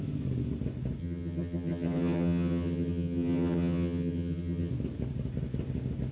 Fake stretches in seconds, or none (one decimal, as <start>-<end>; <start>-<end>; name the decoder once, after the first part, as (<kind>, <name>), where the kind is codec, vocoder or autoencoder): 1.0-4.7 (vocoder, HiFi-GAN)